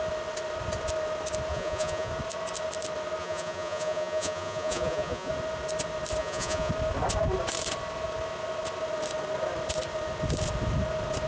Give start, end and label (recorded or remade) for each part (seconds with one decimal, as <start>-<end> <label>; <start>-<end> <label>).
0.0-1.5 recorded; 1.5-2.1 remade; 2.1-3.2 recorded; 3.2-5.3 remade; 5.3-6.2 recorded; 6.2-6.7 remade; 6.7-11.3 recorded